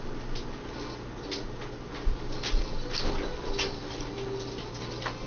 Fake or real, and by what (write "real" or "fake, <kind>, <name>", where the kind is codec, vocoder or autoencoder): real